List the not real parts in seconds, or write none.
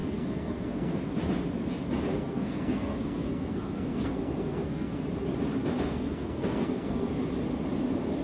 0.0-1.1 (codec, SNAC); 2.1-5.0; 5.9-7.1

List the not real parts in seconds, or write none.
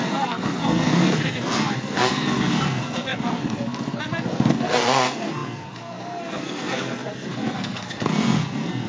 0.0-8.9 (codec, SNAC)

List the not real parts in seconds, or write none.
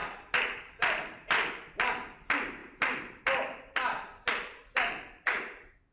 none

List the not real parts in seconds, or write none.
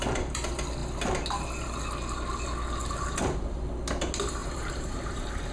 2.8-3.7 (vocoder, BigVGAN v2); 4.4-5.5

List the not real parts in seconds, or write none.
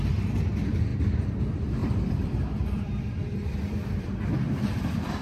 0.0-5.2 (vocoder, BigVGAN v2)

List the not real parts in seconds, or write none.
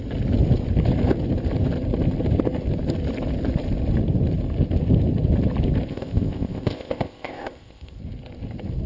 5.9-8.0 (codec, ZipCodec)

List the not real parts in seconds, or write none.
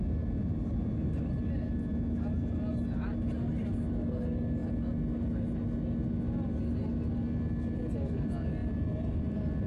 none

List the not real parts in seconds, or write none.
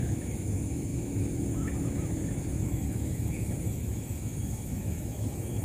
0.0-5.6 (autoencoder, DAC-VAE)